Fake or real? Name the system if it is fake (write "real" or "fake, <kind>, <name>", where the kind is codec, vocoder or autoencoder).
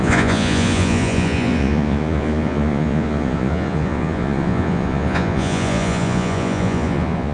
fake, vocoder, Vocos